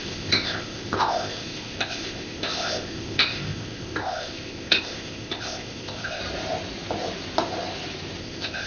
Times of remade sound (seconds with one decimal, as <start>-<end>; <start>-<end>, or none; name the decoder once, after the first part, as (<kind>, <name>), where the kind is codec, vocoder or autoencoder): 0.0-6.2 (codec, ZipCodec); 8.2-8.7